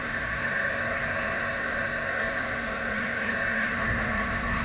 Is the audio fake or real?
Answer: fake